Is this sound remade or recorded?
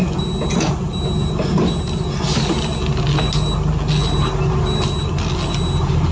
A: recorded